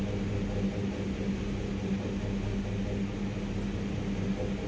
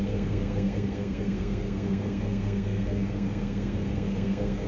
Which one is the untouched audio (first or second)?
first